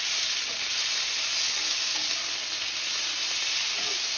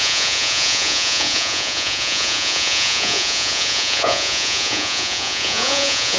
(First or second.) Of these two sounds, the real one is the first